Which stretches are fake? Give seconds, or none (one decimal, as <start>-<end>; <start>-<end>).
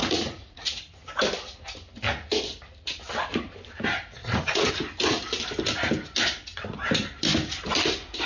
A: 0.0-0.6; 4.2-4.7